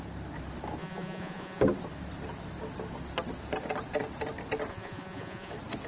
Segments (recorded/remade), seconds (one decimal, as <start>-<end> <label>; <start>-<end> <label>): 0.0-0.8 recorded; 0.8-1.6 remade; 1.6-4.7 recorded; 4.7-5.5 remade; 5.5-5.9 recorded